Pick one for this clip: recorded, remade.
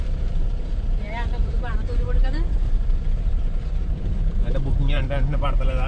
remade